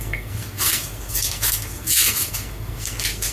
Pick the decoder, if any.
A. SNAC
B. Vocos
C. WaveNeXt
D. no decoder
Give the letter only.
A